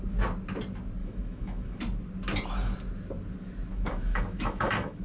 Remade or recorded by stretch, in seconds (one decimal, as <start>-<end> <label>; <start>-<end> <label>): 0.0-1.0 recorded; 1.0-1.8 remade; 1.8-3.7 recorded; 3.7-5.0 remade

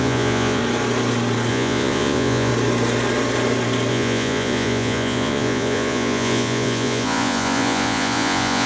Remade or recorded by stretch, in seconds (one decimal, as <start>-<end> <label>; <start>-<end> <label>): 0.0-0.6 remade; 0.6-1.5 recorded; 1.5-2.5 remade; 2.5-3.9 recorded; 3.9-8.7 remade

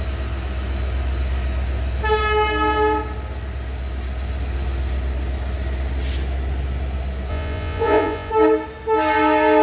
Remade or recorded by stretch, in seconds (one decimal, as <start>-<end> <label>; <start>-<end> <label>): 0.0-7.3 recorded; 7.3-8.3 remade; 8.3-9.6 recorded

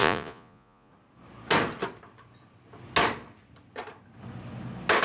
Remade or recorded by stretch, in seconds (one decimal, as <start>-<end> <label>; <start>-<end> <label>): 0.0-0.9 remade; 0.9-5.0 recorded

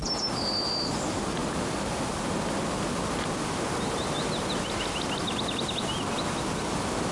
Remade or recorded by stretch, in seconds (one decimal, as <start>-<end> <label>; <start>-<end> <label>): 0.0-7.1 recorded

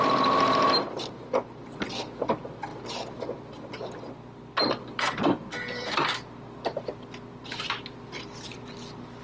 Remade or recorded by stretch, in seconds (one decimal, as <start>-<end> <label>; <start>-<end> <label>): 0.0-9.2 recorded

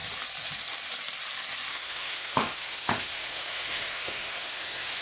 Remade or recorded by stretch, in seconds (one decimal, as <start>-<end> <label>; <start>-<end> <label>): 0.0-1.7 recorded; 1.7-5.0 remade

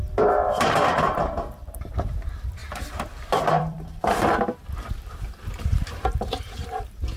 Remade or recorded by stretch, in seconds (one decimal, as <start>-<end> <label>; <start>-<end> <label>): 0.0-7.2 remade